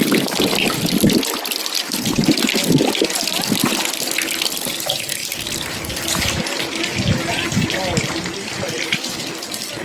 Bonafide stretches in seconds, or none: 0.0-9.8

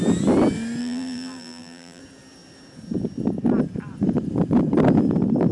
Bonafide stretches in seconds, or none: 0.0-0.8; 2.0-5.5

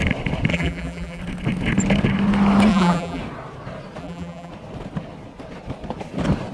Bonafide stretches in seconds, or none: 0.0-0.5; 1.2-2.7; 3.2-4.0; 4.5-6.5

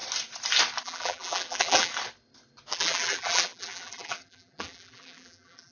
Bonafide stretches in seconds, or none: 0.0-0.8; 1.9-2.7